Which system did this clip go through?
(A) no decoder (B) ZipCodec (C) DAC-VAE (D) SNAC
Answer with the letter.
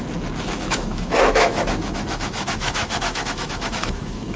C